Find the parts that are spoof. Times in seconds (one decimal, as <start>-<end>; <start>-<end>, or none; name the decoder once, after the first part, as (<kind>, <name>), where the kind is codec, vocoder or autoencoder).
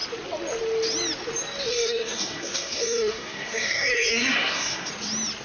1.7-4.9 (codec, SNAC)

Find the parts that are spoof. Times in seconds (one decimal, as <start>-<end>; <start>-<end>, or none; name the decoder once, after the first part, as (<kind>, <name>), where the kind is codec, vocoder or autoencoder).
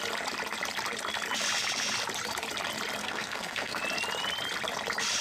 3.0-3.8 (codec, SNAC)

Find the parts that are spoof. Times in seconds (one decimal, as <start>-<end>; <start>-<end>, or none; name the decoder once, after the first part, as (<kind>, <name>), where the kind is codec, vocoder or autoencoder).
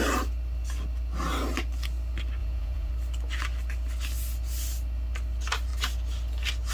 2.4-2.9 (vocoder, Vocos)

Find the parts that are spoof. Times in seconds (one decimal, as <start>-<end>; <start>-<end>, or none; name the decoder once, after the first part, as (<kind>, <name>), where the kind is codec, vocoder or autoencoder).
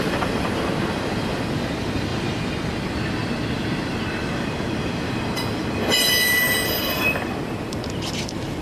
0.0-2.1 (vocoder, BigVGAN v2); 6.8-8.6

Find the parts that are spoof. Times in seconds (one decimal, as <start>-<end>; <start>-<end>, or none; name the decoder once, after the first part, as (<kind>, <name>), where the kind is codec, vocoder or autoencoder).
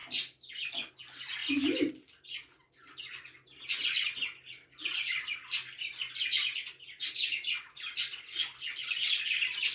0.0-0.9 (vocoder, BigVGAN v2); 3.8-6.0; 7.0-7.6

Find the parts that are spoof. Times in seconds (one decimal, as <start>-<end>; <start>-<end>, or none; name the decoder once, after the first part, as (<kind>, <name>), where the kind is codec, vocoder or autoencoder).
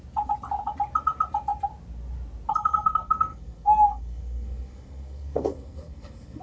2.5-6.4 (codec, SNAC)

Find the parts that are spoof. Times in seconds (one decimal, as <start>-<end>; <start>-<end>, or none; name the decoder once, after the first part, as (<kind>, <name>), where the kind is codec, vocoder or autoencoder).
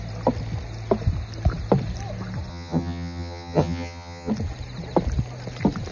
2.5-4.3 (vocoder, HiFi-GAN)